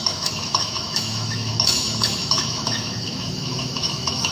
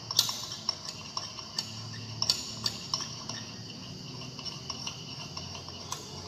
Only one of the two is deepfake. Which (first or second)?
first